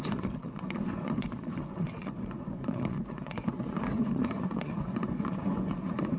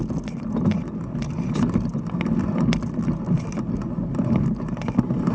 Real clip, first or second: second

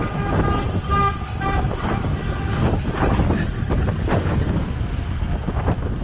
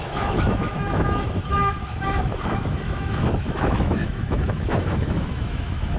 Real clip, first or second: first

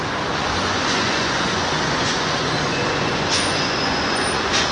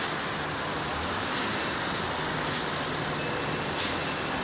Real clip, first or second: second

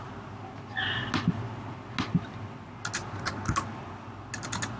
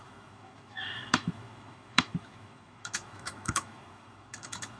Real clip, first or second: first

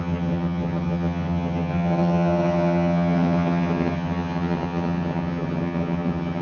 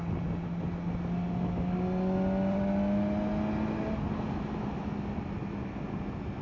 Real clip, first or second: second